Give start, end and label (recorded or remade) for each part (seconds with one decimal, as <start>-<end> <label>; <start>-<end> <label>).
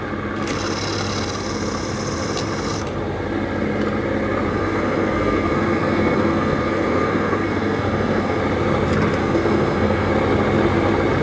0.0-4.5 recorded; 4.5-8.4 remade; 8.4-9.2 recorded; 9.2-10.1 remade; 10.1-11.2 recorded